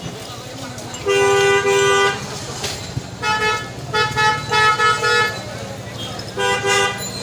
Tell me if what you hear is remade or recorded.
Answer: recorded